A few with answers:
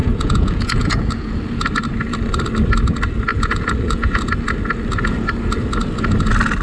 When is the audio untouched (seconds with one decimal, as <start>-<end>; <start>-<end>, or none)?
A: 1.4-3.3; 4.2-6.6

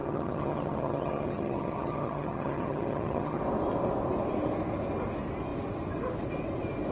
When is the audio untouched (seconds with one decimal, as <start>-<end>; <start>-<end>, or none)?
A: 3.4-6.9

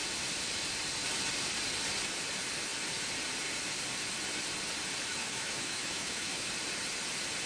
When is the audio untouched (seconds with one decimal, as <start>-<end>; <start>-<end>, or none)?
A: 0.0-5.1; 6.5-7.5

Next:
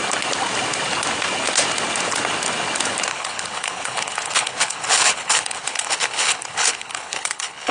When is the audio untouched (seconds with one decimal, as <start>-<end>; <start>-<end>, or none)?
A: 0.0-3.1

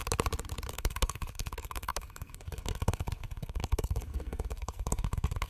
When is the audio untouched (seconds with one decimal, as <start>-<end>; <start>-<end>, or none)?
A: 0.0-0.7

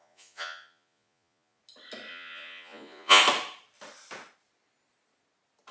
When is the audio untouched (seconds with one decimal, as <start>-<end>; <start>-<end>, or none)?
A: 1.6-2.1; 3.2-5.7

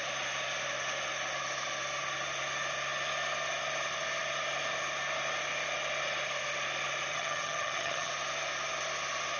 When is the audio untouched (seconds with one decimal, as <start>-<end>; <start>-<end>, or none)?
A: 0.0-7.1; 8.1-9.4